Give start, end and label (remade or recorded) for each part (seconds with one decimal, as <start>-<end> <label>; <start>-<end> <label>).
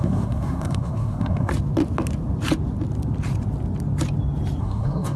0.0-1.5 remade; 1.5-4.6 recorded; 4.6-5.2 remade